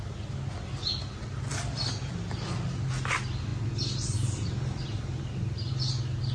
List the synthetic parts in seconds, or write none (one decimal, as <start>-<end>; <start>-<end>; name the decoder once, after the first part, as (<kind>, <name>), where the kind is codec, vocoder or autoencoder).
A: 1.0-2.1 (vocoder, BigVGAN v2); 3.5-5.7